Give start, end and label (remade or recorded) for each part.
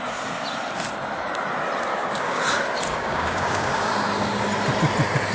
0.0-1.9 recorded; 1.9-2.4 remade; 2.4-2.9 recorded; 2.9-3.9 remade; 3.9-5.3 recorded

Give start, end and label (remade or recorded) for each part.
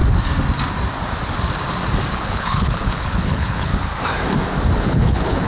0.0-2.1 recorded; 2.1-3.7 remade; 3.7-4.8 recorded; 4.8-5.5 remade